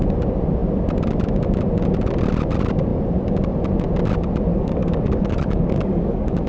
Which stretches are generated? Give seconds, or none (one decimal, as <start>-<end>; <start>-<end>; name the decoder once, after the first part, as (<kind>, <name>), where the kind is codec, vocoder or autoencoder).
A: 4.5-6.5 (codec, DAC)